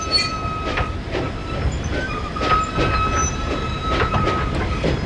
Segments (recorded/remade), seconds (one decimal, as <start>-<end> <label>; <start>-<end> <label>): 0.0-3.2 recorded; 3.2-4.5 remade; 4.5-5.1 recorded